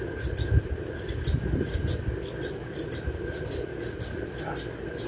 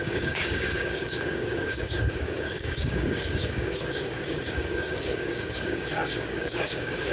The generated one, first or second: second